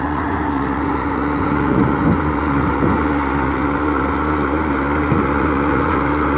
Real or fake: fake